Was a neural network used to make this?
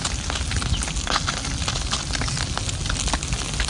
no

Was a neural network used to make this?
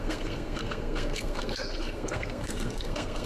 yes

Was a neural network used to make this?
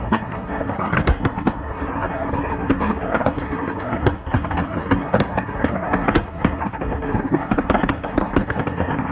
yes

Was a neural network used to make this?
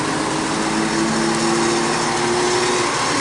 no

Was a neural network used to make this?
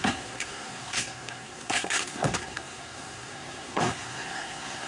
yes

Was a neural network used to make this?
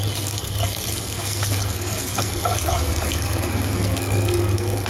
yes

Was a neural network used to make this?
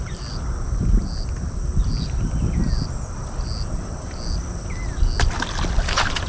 no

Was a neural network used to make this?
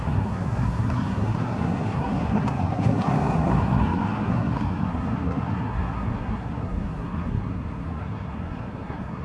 yes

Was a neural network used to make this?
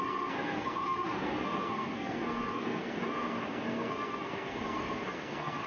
yes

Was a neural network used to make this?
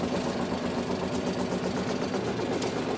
no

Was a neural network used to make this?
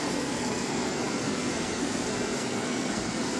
yes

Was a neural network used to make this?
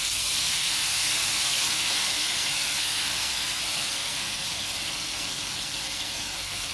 yes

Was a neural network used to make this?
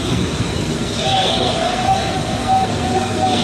yes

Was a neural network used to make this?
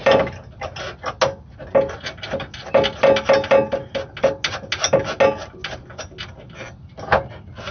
no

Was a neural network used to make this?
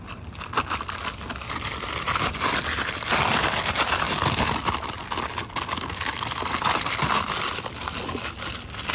no